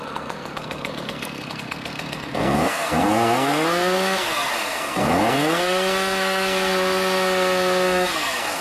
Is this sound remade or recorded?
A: remade